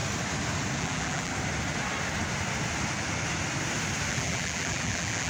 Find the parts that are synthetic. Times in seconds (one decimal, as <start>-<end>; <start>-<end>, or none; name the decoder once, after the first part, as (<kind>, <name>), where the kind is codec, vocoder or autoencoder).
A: 0.8-1.3 (vocoder, BigVGAN v2); 4.1-5.3